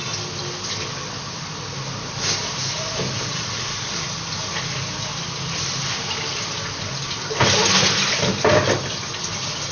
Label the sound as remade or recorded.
recorded